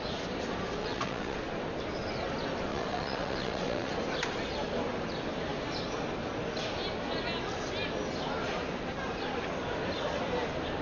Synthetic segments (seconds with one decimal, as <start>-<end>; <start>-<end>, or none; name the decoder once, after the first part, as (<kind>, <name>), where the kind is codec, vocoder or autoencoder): 0.8-1.4 (vocoder, WaveNeXt); 2.7-3.9